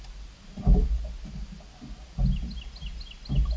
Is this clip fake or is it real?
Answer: real